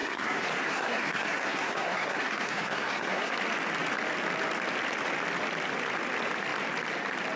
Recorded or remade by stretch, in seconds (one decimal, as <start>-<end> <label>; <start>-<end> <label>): 0.0-3.3 remade; 3.3-7.4 recorded